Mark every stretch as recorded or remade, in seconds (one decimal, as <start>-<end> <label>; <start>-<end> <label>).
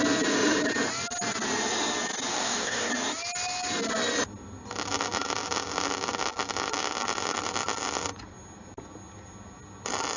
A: 0.0-2.3 recorded; 2.3-2.9 remade; 2.9-10.2 recorded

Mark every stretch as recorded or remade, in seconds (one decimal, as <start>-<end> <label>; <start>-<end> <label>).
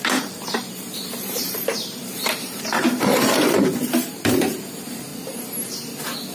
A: 0.0-5.1 remade; 5.1-6.3 recorded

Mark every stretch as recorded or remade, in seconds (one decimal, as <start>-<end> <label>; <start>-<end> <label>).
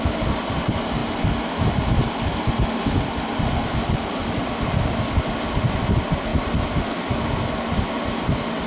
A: 0.0-8.7 recorded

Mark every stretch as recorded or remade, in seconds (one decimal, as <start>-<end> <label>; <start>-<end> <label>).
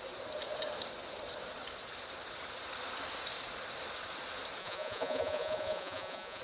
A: 0.0-4.6 recorded; 4.6-6.4 remade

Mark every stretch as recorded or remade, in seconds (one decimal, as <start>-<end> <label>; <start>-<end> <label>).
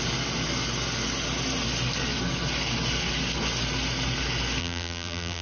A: 0.0-4.6 recorded; 4.6-5.4 remade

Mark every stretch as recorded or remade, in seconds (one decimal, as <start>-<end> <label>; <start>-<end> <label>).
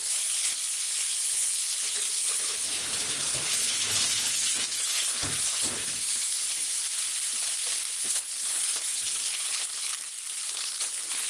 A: 0.0-6.8 remade; 6.8-8.0 recorded; 8.0-9.9 remade; 9.9-10.5 recorded; 10.5-11.3 remade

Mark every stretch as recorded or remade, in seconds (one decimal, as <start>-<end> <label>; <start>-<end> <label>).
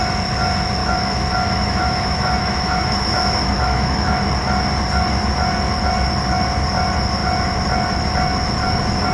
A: 0.0-0.8 recorded; 0.8-4.2 remade; 4.2-9.1 recorded